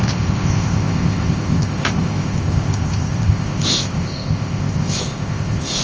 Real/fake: fake